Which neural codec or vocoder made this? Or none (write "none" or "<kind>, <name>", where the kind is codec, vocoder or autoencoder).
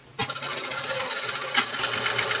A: none